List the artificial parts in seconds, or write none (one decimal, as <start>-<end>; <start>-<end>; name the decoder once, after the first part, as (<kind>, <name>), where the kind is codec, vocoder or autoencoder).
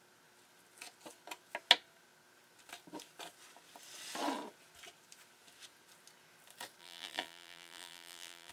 6.8-8.5 (vocoder, BigVGAN v2)